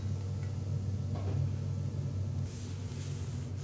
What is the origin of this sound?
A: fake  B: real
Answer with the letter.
B